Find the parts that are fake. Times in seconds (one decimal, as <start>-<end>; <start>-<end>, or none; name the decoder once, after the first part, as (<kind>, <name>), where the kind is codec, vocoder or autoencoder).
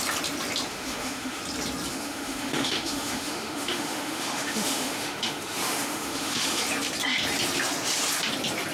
0.7-1.4 (autoencoder, DAC-VAE); 1.9-6.6